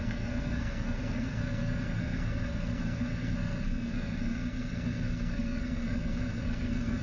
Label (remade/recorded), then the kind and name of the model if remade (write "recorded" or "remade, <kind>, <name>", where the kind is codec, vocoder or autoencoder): remade, codec, SNAC